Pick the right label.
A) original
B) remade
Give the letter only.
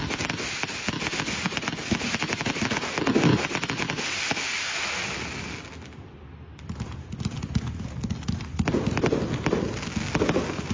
A